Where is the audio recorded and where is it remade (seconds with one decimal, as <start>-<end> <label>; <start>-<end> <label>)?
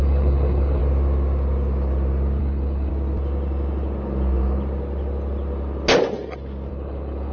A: 0.0-0.8 remade; 0.8-2.4 recorded; 2.4-2.9 remade; 2.9-6.7 recorded; 6.7-7.3 remade